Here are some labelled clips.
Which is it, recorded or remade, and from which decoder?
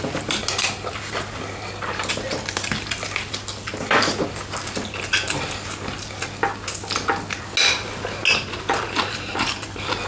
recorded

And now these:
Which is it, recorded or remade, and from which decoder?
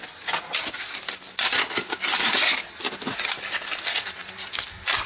recorded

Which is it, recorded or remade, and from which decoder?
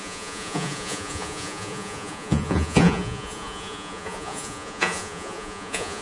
remade, vocoder, Vocos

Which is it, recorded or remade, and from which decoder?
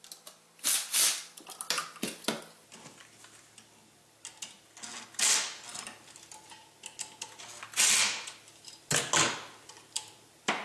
recorded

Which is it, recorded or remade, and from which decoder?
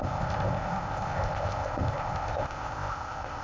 remade, codec, ZipCodec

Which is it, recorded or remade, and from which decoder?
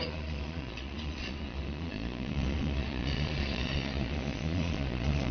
remade, vocoder, Vocos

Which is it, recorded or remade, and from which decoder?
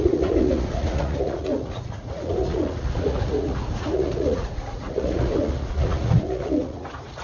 remade, vocoder, Vocos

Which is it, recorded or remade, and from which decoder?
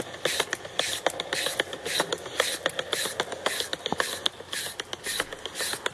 recorded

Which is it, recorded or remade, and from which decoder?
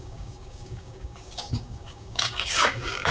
remade, codec, DAC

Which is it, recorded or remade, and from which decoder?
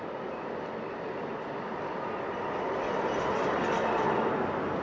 recorded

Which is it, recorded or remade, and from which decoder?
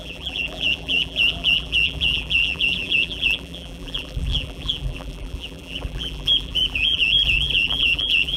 remade, vocoder, BigVGAN v2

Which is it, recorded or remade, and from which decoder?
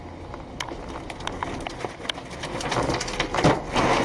recorded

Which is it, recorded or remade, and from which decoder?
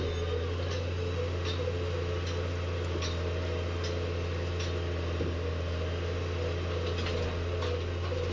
recorded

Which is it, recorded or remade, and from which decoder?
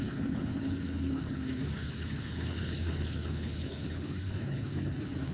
remade, codec, HILCodec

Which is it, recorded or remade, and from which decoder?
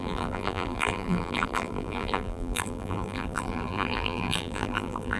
remade, vocoder, BigVGAN v2